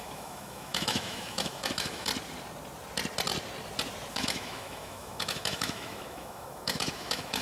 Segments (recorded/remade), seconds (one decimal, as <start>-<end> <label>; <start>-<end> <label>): 0.0-2.1 remade; 2.1-4.1 recorded; 4.1-7.4 remade